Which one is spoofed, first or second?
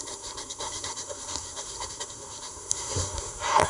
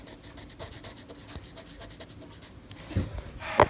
first